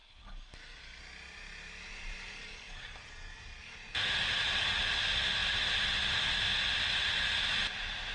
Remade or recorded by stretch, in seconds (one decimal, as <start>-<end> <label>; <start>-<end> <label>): 0.0-1.0 remade; 1.0-2.4 recorded; 2.4-3.0 remade; 3.0-8.1 recorded